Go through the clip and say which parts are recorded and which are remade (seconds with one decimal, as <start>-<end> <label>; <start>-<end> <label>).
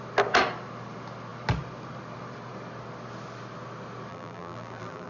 0.0-4.1 recorded; 4.1-5.1 remade